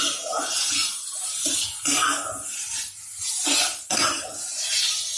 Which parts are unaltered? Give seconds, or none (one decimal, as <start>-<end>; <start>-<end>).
0.0-5.2